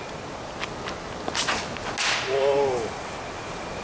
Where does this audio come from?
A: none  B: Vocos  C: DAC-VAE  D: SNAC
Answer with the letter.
A